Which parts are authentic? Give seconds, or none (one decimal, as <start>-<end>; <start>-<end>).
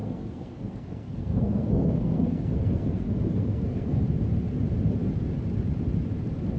4.0-6.6